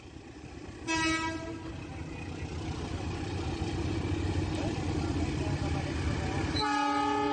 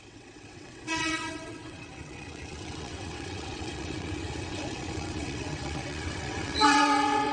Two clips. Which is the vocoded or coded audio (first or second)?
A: second